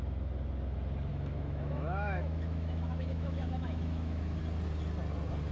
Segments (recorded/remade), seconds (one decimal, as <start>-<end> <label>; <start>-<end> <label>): 0.0-1.1 recorded; 1.1-4.4 remade; 4.4-5.5 recorded